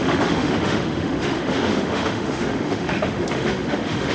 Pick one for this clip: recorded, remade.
remade